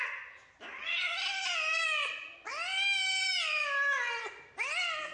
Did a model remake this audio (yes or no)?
no